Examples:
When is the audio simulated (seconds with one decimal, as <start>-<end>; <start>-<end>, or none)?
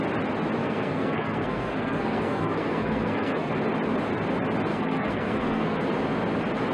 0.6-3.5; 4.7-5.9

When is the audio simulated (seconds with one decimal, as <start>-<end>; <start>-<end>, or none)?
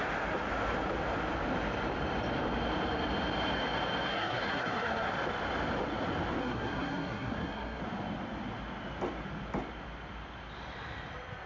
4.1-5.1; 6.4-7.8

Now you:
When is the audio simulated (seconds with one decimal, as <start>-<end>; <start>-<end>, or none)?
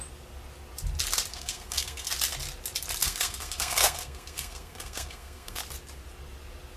1.3-2.1; 3.0-5.6